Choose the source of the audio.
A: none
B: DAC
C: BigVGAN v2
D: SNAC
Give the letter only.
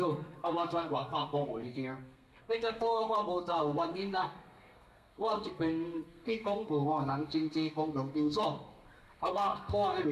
D